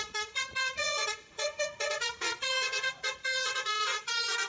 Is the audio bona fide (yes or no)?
no